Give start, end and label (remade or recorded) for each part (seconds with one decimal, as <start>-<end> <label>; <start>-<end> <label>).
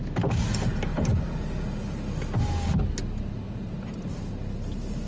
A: 0.0-5.1 recorded